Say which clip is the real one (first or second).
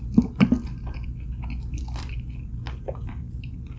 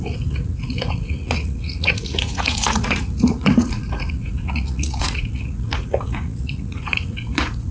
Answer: first